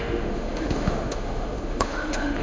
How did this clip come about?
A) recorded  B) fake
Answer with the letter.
B